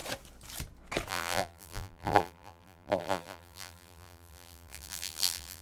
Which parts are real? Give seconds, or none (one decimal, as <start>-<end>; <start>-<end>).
0.0-1.1